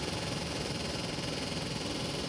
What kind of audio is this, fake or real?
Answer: fake